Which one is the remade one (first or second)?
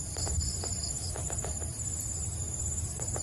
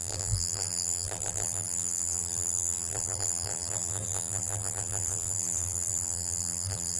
second